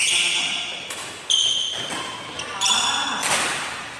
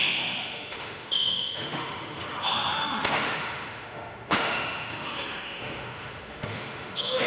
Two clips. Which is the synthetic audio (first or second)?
second